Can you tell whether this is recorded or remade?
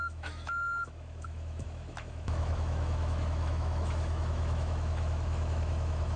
remade